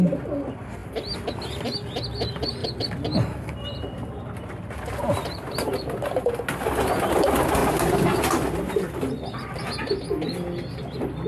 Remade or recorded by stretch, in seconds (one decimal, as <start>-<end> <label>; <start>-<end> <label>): 0.0-2.6 recorded; 2.6-6.2 remade; 6.2-7.6 recorded; 7.6-9.6 remade; 9.6-11.3 recorded